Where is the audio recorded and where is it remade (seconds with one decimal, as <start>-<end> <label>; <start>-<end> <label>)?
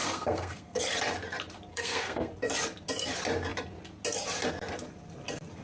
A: 0.0-0.8 remade; 0.8-1.7 recorded; 1.7-2.3 remade; 2.3-5.6 recorded